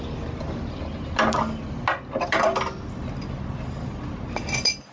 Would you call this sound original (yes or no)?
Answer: yes